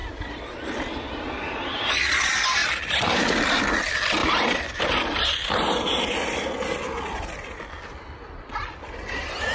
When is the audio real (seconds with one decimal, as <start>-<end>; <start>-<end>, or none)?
0.0-9.5